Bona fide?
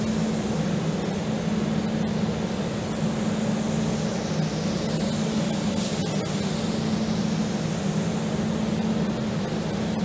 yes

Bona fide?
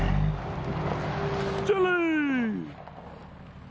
yes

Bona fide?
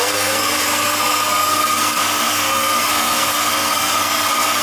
no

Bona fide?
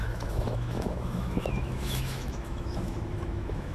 no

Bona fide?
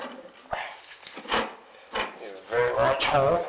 yes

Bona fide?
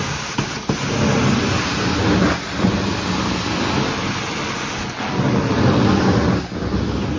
yes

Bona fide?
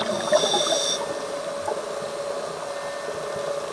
yes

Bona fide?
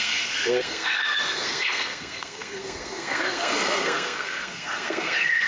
no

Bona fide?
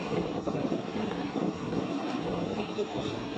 no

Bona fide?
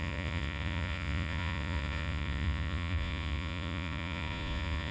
no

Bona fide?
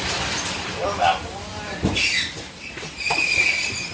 yes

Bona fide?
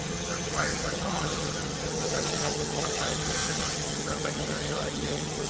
no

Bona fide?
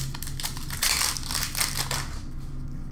yes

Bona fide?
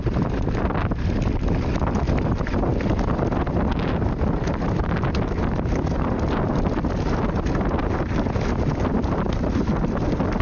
yes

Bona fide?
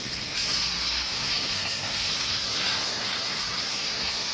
no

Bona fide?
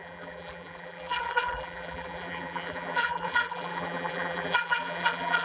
no